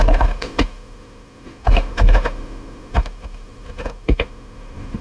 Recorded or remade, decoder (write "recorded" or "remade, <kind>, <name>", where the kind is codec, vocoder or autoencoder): remade, autoencoder, DAC-VAE